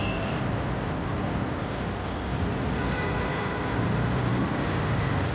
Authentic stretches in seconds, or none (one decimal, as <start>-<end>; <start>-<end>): 0.0-5.3